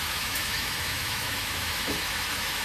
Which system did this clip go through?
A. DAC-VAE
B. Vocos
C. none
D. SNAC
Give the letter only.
A